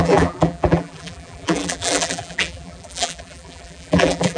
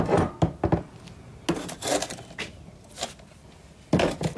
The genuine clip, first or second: second